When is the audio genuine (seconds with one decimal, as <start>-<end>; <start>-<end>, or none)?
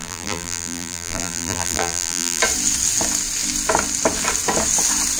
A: 2.4-5.2